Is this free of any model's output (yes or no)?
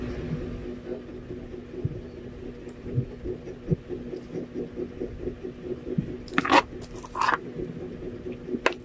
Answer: yes